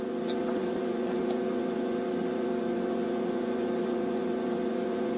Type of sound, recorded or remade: remade